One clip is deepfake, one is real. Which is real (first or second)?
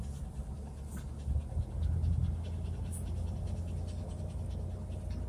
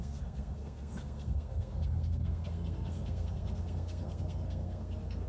first